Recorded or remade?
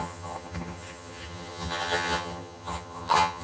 remade